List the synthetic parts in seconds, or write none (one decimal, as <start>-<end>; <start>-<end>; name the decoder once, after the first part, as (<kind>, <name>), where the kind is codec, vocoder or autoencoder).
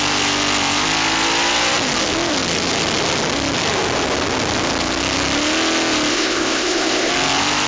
6.1-7.1 (codec, ZipCodec)